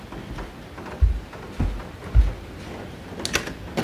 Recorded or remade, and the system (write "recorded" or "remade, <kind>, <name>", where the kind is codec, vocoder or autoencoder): recorded